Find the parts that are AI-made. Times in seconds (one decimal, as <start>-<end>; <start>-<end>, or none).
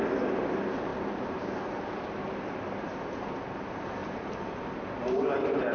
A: 0.9-2.1; 4.0-4.6